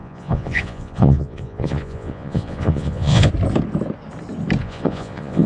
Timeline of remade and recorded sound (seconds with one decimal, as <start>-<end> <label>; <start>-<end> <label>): 0.0-3.3 remade; 3.3-4.6 recorded; 4.6-5.5 remade